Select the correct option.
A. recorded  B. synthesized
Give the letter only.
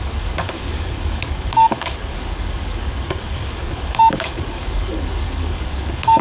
B